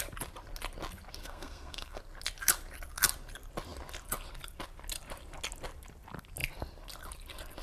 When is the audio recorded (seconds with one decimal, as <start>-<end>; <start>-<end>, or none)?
0.0-1.2; 2.0-7.6